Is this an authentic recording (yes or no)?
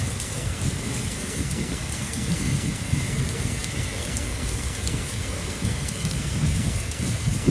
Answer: no